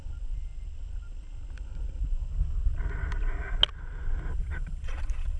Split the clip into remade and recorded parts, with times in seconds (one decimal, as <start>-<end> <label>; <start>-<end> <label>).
0.0-4.3 recorded; 4.3-5.4 remade